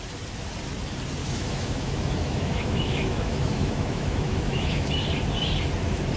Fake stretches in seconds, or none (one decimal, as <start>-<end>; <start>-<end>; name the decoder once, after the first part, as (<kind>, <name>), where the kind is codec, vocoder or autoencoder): 1.2-4.9 (autoencoder, DAC-VAE)